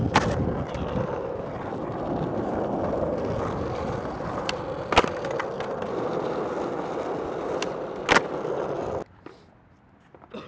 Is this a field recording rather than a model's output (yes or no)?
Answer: yes